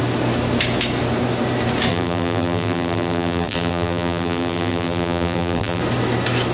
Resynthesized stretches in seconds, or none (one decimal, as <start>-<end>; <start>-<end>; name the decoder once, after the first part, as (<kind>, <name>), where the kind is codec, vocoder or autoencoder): 1.9-5.8 (vocoder, BigVGAN v2)